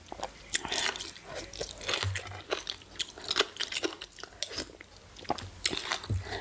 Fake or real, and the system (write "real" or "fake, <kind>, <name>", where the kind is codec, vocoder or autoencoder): real